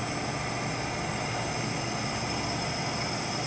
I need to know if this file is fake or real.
real